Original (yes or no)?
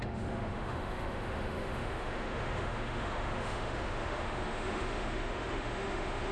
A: no